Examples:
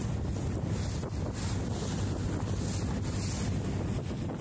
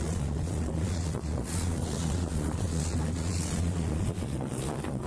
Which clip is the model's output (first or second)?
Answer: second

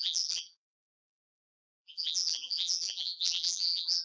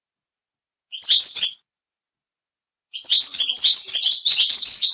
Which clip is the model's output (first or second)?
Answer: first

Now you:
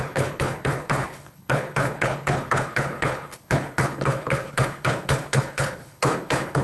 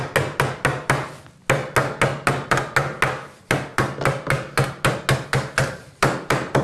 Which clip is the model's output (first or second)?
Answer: first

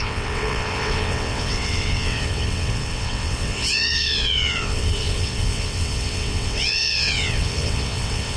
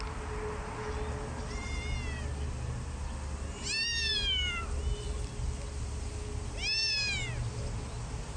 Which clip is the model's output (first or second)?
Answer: first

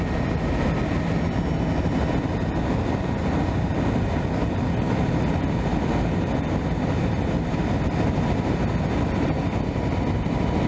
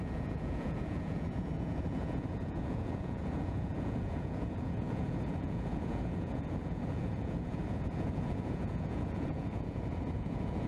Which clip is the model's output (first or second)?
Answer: second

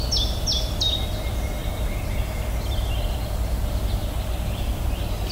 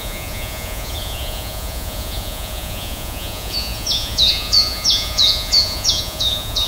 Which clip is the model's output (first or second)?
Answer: second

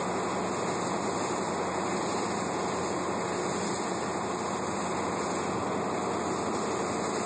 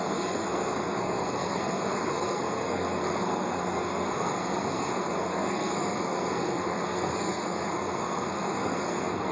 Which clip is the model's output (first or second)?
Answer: second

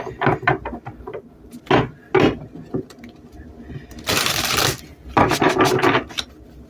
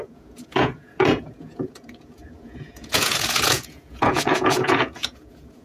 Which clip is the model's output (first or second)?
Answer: second